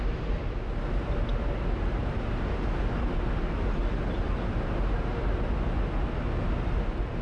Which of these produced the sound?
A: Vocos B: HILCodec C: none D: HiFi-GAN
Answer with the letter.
C